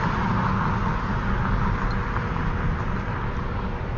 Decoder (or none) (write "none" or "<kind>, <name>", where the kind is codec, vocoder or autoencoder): none